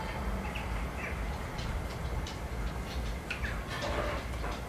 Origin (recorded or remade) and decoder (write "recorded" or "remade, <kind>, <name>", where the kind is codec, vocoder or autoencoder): recorded